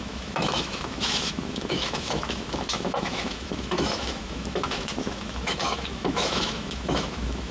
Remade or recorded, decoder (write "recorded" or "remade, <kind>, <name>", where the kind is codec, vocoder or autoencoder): remade, autoencoder, DAC-VAE